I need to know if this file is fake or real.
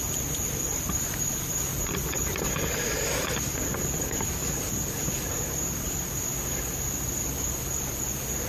real